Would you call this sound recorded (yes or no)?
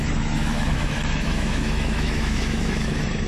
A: no